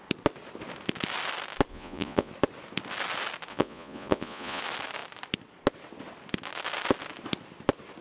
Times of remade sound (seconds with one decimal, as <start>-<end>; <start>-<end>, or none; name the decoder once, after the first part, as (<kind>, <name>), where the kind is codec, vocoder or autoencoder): 1.7-2.3 (vocoder, Vocos); 3.5-4.6